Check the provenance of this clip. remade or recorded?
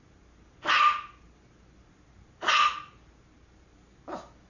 recorded